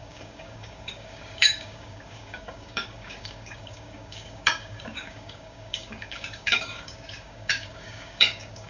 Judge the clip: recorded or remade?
remade